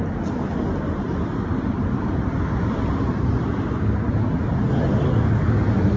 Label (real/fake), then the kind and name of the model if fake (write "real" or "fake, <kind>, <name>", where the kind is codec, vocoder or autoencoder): real